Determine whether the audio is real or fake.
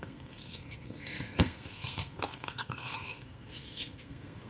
fake